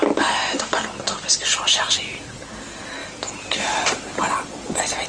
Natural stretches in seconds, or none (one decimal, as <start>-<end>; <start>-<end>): 0.0-5.1